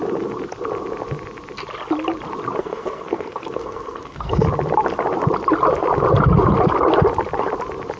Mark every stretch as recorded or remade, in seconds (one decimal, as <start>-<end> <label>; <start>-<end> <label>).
0.0-2.6 recorded; 2.6-4.4 remade; 4.4-8.0 recorded